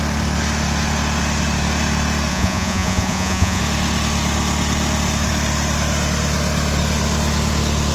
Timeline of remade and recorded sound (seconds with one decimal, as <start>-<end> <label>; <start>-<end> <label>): 0.0-2.3 recorded; 2.3-3.6 remade; 3.6-7.9 recorded